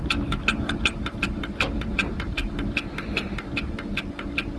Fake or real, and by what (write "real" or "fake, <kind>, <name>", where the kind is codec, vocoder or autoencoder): real